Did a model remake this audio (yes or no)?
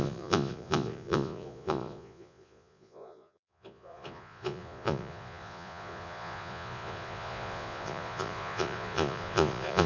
yes